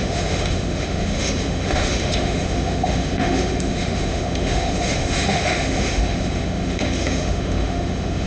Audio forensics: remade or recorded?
remade